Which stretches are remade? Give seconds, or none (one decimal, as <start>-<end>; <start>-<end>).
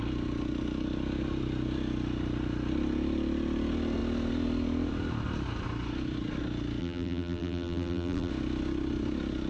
6.8-8.3